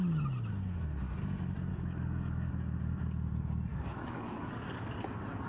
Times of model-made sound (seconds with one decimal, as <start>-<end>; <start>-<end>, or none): 1.7-2.5; 3.7-4.9